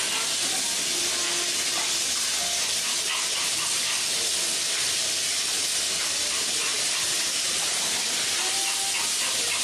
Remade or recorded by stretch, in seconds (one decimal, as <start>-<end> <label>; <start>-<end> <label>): 0.0-6.7 recorded; 6.7-8.4 remade; 8.4-9.6 recorded

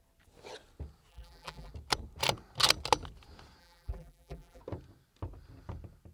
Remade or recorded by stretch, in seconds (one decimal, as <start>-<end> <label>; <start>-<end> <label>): 0.0-1.1 recorded; 1.1-1.7 remade; 1.7-3.6 recorded; 3.6-4.6 remade; 4.6-6.1 recorded